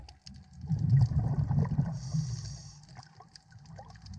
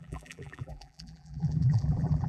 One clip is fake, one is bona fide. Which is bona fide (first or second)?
first